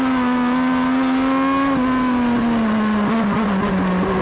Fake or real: real